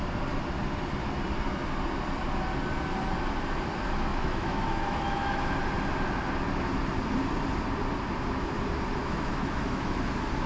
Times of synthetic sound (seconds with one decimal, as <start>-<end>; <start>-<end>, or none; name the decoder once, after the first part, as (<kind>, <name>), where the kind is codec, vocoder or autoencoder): 4.1-5.5 (autoencoder, DAC-VAE); 9.0-10.0